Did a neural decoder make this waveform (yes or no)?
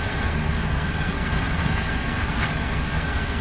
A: yes